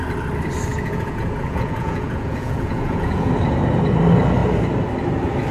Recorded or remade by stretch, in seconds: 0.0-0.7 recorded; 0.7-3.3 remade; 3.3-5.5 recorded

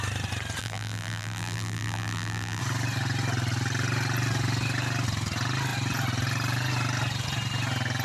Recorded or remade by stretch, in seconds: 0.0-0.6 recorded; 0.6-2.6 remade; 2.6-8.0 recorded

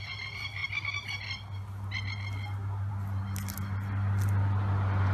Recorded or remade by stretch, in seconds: 0.0-5.1 recorded